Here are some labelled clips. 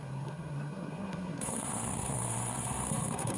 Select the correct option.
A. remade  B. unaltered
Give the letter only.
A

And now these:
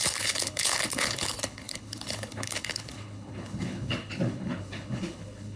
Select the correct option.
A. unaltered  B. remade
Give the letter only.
B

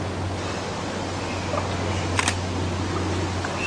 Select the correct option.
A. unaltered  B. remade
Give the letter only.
A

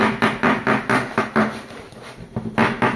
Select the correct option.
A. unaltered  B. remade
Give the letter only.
A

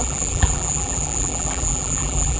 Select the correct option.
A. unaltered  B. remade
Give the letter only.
B